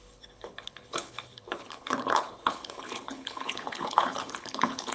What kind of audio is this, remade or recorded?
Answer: remade